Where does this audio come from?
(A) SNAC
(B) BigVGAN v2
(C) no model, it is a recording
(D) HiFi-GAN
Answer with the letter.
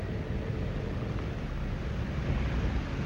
C